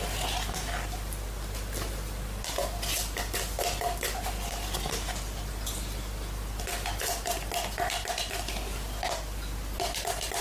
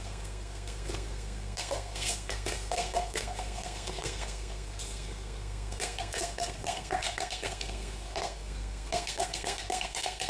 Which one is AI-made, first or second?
second